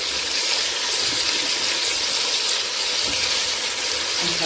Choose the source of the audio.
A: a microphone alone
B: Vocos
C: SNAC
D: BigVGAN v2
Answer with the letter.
A